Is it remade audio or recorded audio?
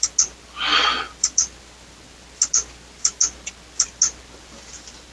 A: recorded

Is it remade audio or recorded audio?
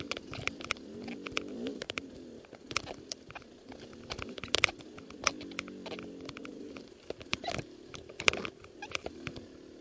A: recorded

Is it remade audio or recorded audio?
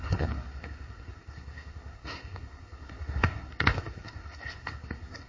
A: remade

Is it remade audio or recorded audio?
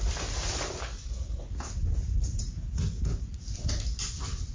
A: recorded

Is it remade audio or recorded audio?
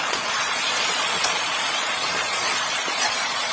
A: remade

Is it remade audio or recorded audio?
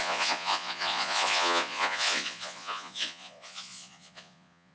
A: remade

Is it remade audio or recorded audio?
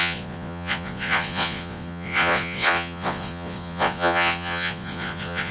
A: remade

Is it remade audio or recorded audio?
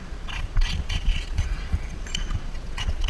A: remade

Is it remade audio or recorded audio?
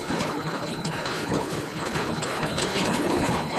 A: remade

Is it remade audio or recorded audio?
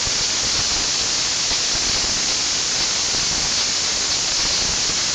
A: recorded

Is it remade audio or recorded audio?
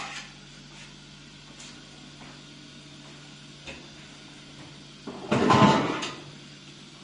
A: recorded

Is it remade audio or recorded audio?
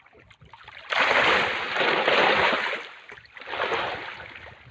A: recorded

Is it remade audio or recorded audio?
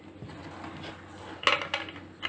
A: recorded